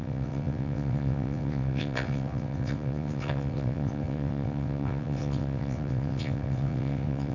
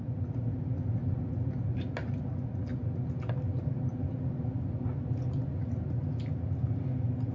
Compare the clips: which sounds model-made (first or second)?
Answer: first